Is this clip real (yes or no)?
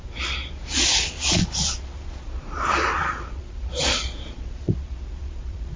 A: no